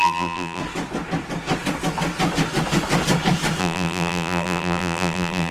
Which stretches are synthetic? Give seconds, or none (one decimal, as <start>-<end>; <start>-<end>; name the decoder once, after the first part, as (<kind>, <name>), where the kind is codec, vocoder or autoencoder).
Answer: 0.0-0.6 (vocoder, BigVGAN v2); 3.6-5.5